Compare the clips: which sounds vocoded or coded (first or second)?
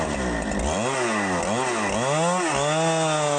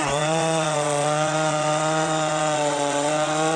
second